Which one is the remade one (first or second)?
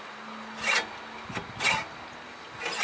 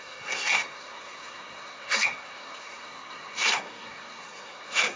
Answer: second